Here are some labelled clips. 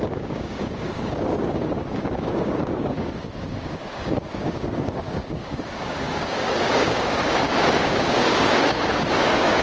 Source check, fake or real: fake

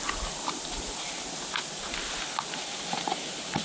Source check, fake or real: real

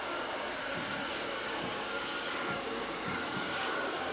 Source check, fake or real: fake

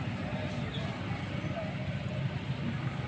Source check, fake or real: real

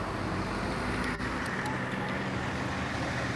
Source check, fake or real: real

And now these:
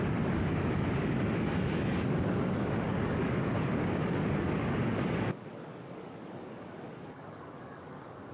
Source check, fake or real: fake